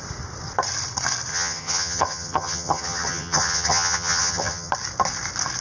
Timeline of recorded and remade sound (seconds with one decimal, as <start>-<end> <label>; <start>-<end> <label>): 0.0-1.3 recorded; 1.3-4.7 remade; 4.7-5.6 recorded